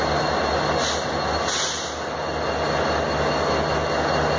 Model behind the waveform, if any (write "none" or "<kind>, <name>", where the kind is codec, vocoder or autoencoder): none